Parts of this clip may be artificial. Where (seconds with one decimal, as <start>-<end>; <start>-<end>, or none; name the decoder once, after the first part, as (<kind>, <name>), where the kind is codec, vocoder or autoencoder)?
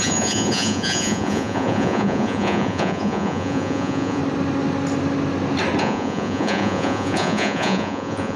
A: 0.0-4.2 (vocoder, Vocos); 5.8-8.4